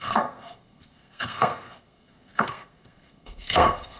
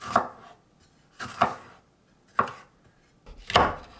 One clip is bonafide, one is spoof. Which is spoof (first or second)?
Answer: first